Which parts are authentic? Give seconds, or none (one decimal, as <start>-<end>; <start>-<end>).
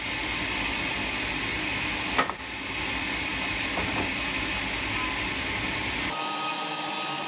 0.0-7.3